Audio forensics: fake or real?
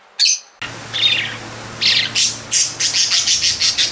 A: real